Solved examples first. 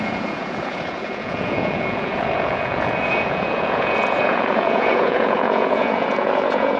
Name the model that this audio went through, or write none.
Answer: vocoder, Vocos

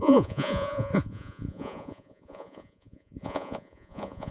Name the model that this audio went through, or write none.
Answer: vocoder, Vocos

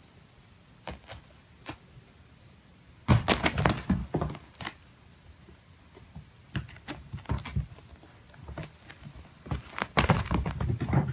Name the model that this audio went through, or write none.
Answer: none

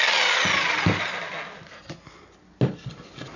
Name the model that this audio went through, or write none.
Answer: none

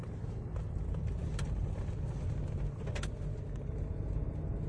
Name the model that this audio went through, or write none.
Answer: none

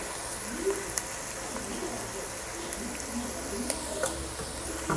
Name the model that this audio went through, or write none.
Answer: none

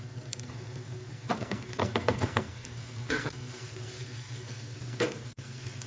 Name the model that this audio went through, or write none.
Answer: codec, SNAC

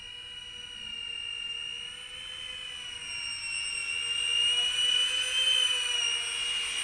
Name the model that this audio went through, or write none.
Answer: none